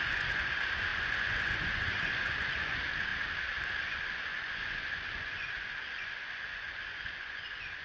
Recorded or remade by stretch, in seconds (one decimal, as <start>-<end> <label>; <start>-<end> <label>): 0.0-3.1 remade; 3.1-3.9 recorded; 3.9-7.8 remade